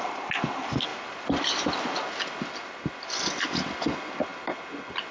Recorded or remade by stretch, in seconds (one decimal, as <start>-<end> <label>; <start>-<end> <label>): 0.0-5.1 recorded